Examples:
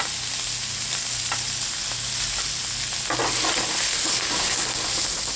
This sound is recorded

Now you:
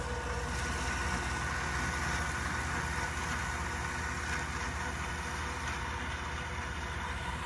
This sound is recorded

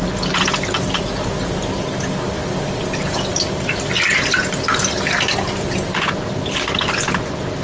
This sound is recorded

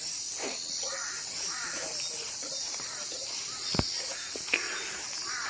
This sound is recorded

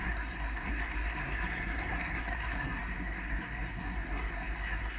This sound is remade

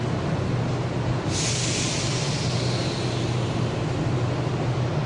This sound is recorded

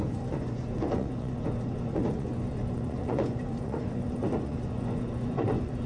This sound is remade